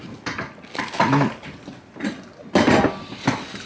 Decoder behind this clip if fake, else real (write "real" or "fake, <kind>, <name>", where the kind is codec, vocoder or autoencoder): real